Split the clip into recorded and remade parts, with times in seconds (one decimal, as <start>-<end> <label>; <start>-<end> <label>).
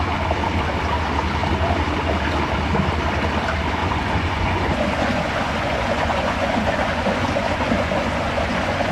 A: 0.0-3.8 recorded; 3.8-8.9 remade